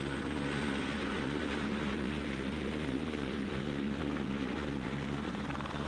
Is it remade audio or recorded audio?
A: remade